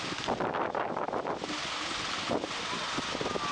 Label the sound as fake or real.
real